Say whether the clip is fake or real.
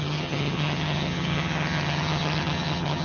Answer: fake